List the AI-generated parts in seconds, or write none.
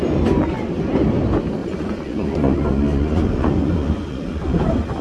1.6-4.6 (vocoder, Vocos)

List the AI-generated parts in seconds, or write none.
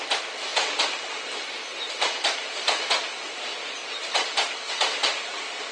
none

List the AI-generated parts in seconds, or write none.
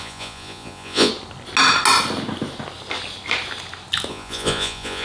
0.0-1.1 (vocoder, Vocos); 4.1-5.0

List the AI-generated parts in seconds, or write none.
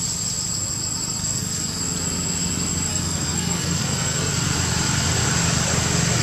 1.2-1.8 (codec, SNAC); 2.9-4.3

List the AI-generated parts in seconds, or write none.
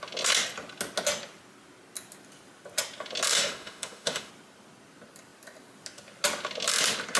3.3-4.3 (autoencoder, DAC-VAE)